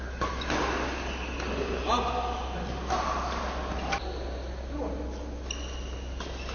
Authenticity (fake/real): real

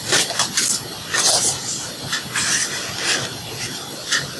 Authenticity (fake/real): real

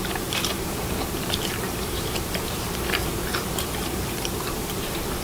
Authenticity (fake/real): fake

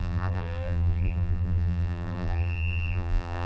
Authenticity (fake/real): fake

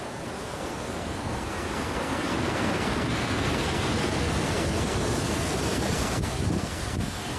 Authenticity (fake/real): fake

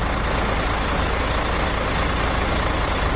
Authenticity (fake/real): real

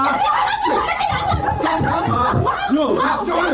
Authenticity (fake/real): fake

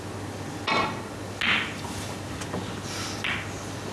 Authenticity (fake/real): real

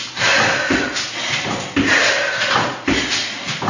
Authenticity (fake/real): real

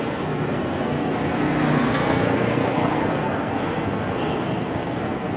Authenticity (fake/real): fake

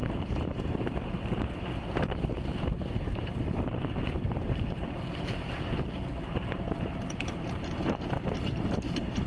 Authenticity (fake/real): fake